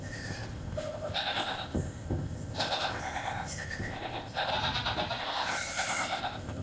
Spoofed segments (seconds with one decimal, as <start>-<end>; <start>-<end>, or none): 0.0-4.5; 5.2-6.6